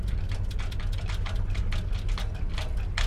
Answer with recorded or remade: recorded